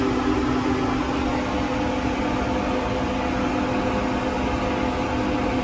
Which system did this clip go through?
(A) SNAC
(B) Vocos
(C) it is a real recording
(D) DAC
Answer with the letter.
C